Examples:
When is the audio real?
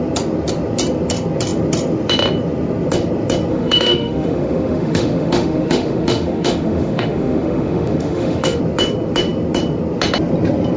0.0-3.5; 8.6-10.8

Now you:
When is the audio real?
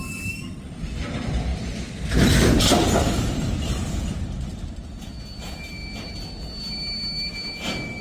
0.0-8.0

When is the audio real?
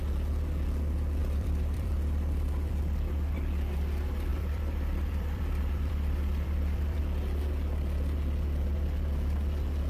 0.0-1.2; 2.8-4.3; 7.0-9.9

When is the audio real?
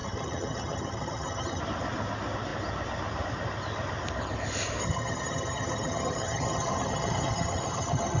1.6-4.8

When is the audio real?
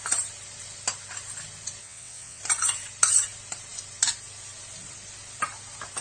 0.0-1.8; 2.4-6.0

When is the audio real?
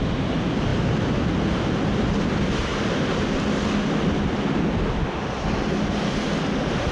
0.0-6.9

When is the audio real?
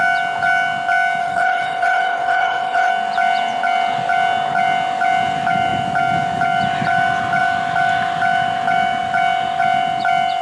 0.0-1.2; 2.9-10.4